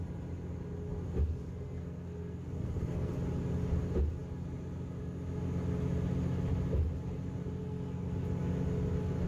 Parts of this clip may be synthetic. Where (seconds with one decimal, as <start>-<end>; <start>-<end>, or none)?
1.5-3.1; 7.6-8.1